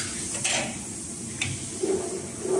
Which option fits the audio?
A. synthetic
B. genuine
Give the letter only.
B